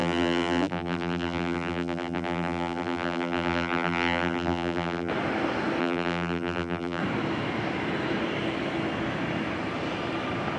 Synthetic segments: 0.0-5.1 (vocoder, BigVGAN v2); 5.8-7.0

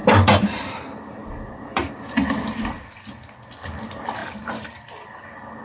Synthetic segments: 0.0-2.9 (vocoder, BigVGAN v2); 4.2-4.7

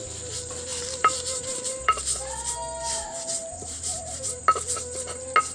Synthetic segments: 0.7-2.0 (vocoder, BigVGAN v2); 3.4-4.4

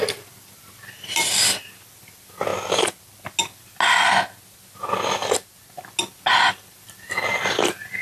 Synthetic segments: 0.0-2.5 (vocoder, BigVGAN v2); 6.5-8.0

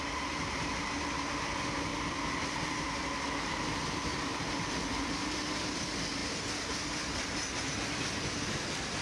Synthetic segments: none

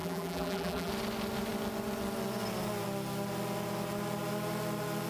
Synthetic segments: 0.0-0.9 (vocoder, BigVGAN v2)

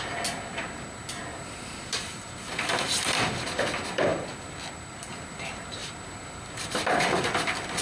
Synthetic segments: 1.3-3.6 (vocoder, BigVGAN v2); 4.1-5.1; 5.8-6.4